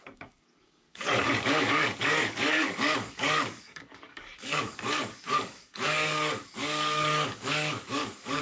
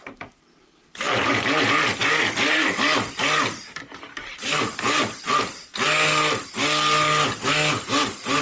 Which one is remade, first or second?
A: first